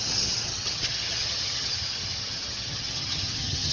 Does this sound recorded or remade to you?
remade